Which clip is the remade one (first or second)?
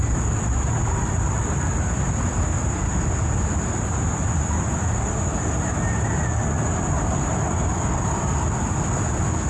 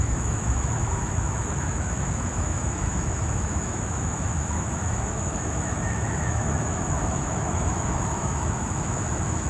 second